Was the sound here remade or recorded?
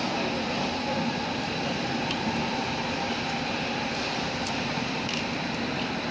recorded